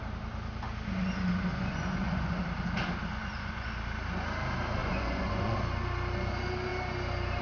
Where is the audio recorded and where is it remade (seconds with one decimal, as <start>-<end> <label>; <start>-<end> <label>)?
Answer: 0.0-1.5 recorded; 1.5-2.4 remade; 2.4-3.1 recorded; 3.1-3.7 remade; 3.7-4.8 recorded; 4.8-5.6 remade; 5.6-7.4 recorded